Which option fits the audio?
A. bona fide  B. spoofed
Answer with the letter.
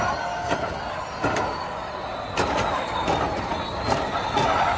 A